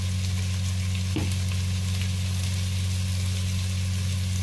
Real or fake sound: real